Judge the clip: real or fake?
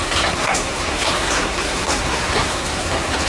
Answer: fake